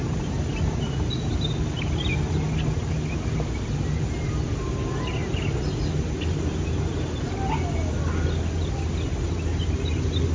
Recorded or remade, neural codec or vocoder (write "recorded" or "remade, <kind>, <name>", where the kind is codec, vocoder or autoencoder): recorded